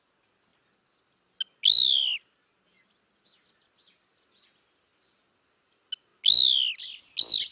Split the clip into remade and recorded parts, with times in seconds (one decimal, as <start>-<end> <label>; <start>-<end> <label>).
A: 0.0-7.5 recorded